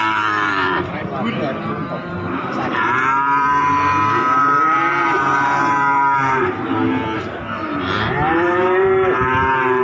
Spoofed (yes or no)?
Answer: yes